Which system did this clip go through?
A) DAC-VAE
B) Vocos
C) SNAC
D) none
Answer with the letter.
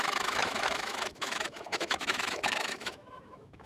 A